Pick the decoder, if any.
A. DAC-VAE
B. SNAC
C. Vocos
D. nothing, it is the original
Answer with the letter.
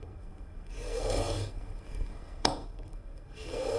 B